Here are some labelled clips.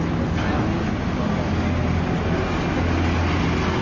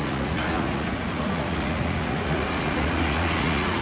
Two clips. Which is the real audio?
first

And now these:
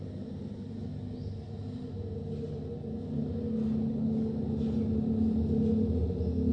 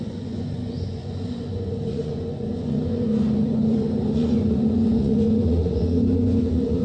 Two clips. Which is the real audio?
first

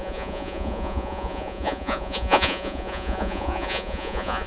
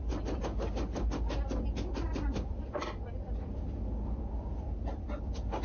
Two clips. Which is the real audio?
second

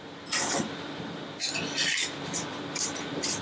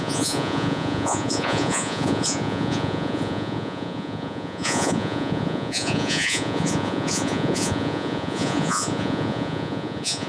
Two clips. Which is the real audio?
first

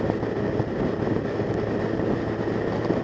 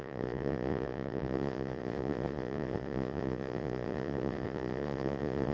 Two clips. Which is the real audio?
first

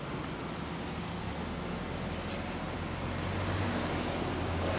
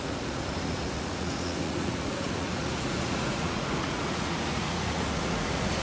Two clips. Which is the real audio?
first